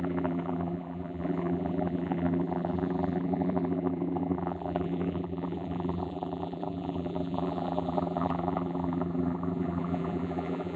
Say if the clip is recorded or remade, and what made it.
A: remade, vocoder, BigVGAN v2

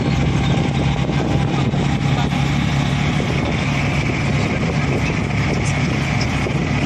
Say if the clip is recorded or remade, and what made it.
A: recorded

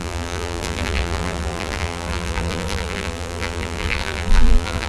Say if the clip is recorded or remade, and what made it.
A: remade, vocoder, BigVGAN v2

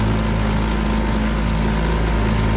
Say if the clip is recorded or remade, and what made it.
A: recorded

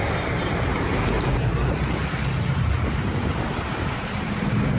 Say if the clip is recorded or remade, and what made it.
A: remade, vocoder, BigVGAN v2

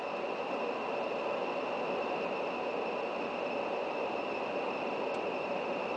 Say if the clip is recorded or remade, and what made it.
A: recorded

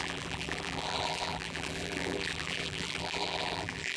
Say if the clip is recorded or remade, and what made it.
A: remade, vocoder, BigVGAN v2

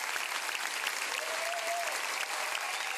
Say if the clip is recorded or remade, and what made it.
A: recorded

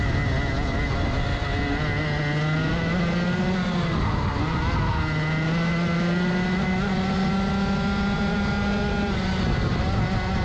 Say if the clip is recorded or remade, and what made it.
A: recorded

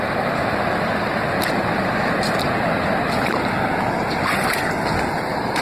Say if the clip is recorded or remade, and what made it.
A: remade, vocoder, BigVGAN v2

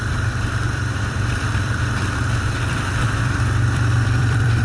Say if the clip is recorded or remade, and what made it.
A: remade, vocoder, BigVGAN v2